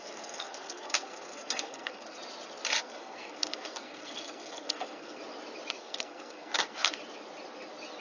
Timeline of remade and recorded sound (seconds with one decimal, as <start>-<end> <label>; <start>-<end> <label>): 0.0-2.2 remade; 2.2-2.8 recorded; 2.8-5.2 remade; 5.2-5.7 recorded; 5.7-7.0 remade; 7.0-8.0 recorded

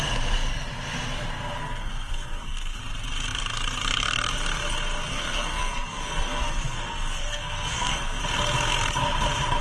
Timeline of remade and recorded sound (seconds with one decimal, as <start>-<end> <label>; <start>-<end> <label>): 0.0-1.6 recorded; 1.6-2.8 remade; 2.8-5.1 recorded; 5.1-8.2 remade; 8.2-9.6 recorded

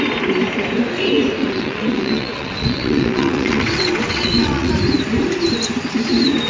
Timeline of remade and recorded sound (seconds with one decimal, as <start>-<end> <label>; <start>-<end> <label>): 0.0-1.4 recorded; 1.4-4.7 remade; 4.7-6.5 recorded

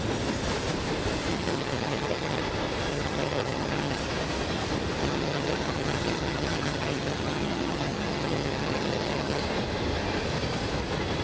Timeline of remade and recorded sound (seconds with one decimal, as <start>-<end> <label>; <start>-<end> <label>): 0.0-1.3 recorded; 1.3-2.4 remade; 2.4-2.9 recorded; 2.9-4.0 remade; 4.0-5.0 recorded; 5.0-9.4 remade; 9.4-11.2 recorded

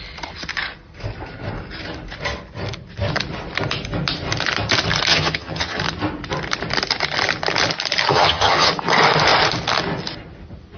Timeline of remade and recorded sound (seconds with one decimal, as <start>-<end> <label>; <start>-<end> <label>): 0.0-5.1 recorded; 5.1-5.8 remade; 5.8-8.1 recorded; 8.1-8.7 remade; 8.7-10.8 recorded